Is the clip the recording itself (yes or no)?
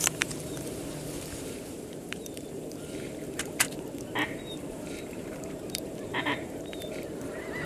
no